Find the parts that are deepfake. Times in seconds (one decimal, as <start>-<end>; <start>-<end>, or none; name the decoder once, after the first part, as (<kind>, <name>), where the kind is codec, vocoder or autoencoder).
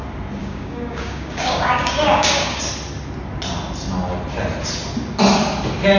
0.4-2.6 (codec, DAC)